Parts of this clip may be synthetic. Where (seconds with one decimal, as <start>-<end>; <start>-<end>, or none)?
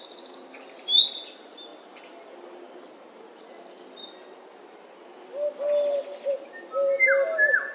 none